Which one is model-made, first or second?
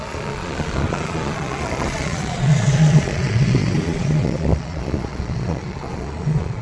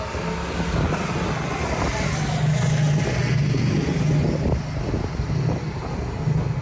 first